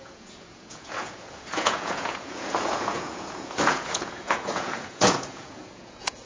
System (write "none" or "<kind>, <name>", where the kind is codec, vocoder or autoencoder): vocoder, Vocos